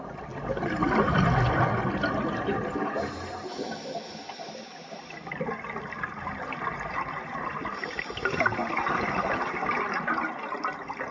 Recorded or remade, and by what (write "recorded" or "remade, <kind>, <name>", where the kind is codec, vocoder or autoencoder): recorded